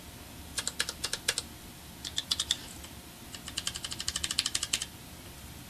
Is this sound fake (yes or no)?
no